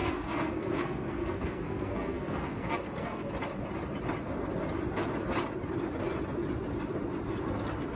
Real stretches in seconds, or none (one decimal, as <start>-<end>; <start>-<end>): 3.3-8.0